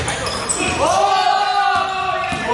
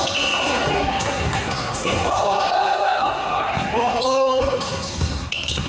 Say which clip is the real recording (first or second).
first